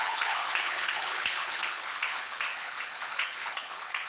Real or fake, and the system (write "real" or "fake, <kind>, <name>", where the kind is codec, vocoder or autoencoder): fake, codec, HILCodec